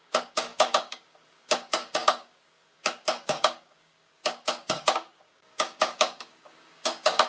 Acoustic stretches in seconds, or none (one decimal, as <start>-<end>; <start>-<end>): none